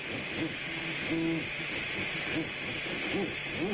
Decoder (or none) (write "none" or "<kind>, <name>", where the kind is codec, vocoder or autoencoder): none